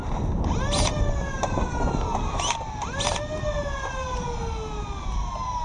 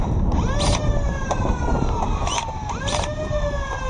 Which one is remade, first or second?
second